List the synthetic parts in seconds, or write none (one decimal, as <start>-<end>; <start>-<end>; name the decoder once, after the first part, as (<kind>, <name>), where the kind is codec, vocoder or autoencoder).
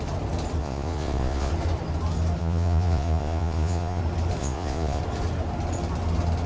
0.6-1.5 (vocoder, Vocos); 2.4-4.0; 4.4-5.0